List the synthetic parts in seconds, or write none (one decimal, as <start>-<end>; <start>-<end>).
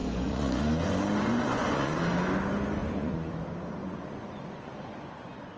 0.0-2.0; 2.8-3.3; 3.8-5.6